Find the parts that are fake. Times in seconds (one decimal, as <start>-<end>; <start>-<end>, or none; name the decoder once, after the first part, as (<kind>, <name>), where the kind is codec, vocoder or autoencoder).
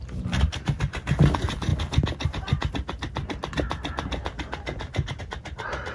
none